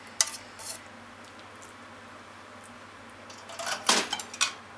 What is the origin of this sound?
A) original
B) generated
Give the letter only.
A